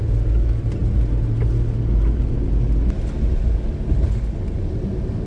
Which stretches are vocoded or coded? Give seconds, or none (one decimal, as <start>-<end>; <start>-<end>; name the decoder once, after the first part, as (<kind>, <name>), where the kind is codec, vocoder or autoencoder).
none